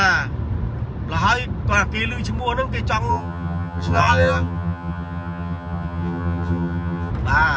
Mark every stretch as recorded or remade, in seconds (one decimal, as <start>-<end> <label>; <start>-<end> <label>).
0.0-3.1 recorded; 3.1-7.1 remade; 7.1-7.6 recorded